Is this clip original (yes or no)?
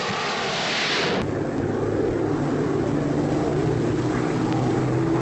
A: yes